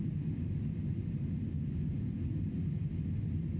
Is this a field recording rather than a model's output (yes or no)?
yes